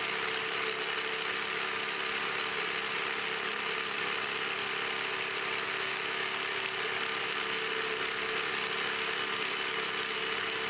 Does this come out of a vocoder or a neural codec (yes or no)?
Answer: no